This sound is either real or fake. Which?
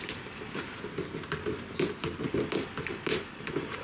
real